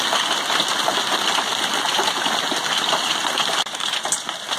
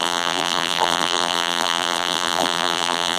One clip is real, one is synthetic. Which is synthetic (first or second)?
second